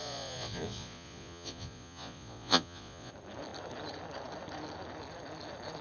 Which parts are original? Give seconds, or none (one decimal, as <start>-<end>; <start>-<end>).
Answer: 3.1-5.8